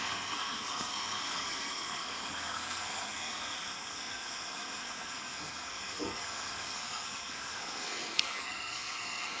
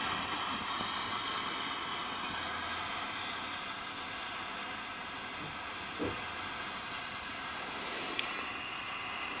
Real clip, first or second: second